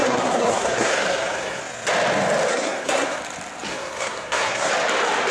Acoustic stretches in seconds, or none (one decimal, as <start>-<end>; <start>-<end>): 1.6-2.5; 3.2-3.7; 4.7-5.3